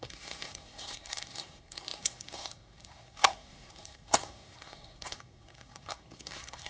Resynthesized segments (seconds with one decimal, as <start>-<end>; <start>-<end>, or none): 0.0-6.7